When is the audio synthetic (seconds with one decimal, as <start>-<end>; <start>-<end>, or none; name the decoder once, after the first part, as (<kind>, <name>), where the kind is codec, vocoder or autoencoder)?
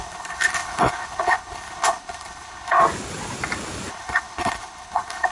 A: 0.0-2.8 (codec, HILCodec); 3.9-5.3